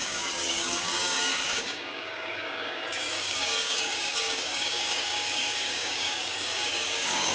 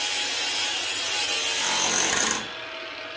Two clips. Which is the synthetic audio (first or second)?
first